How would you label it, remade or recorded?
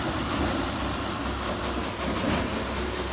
recorded